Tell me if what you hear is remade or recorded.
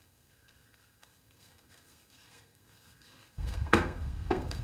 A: remade